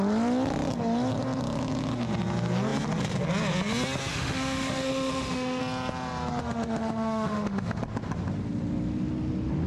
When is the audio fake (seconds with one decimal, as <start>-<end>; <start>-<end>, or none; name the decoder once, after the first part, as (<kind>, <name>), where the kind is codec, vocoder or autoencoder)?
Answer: 4.1-5.6 (autoencoder, DAC-VAE); 6.4-7.8